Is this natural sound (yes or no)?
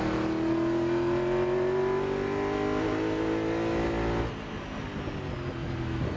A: yes